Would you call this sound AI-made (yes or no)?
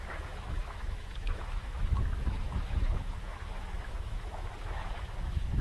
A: yes